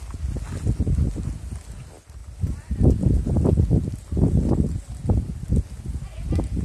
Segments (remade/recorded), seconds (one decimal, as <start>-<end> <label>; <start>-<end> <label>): 0.0-6.6 recorded